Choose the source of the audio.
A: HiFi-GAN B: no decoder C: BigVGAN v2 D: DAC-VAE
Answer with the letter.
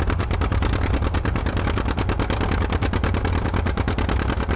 B